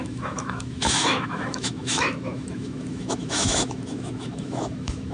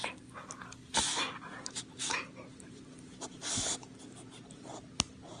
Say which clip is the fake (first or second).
first